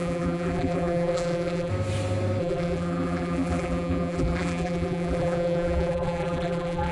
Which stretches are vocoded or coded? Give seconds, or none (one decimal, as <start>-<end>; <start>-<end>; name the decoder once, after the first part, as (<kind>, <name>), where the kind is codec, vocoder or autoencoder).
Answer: 0.0-1.7 (vocoder, BigVGAN v2); 2.4-6.9